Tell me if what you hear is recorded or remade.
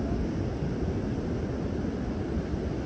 recorded